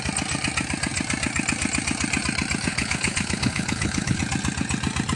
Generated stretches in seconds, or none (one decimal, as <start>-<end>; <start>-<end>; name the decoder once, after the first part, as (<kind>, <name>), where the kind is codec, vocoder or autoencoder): 2.7-4.2 (codec, HILCodec)